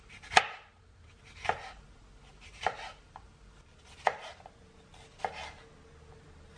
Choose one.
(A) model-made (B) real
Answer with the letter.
B